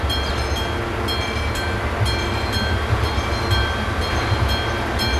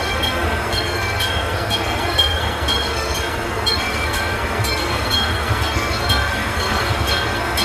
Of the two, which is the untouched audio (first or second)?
first